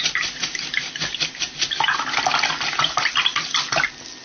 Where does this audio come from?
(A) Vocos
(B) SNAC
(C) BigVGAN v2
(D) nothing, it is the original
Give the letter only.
D